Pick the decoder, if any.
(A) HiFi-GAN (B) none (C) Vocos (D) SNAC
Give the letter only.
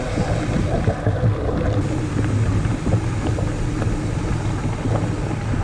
B